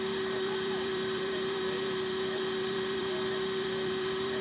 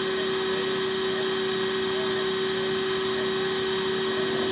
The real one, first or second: second